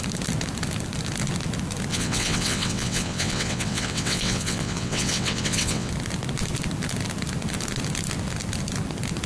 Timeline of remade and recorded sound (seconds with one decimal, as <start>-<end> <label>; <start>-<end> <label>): 0.0-1.9 recorded; 1.9-5.9 remade; 5.9-9.3 recorded